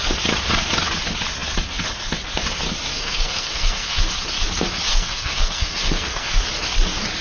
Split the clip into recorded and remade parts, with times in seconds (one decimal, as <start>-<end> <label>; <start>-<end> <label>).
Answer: 0.0-2.9 recorded; 2.9-4.1 remade; 4.1-4.9 recorded; 4.9-6.4 remade; 6.4-7.2 recorded